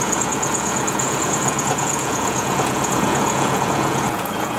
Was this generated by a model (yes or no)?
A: yes